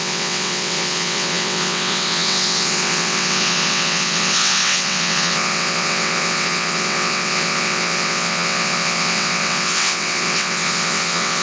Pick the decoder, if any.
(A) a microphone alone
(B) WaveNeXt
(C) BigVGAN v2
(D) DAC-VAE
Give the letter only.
B